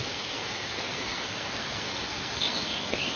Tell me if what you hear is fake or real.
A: fake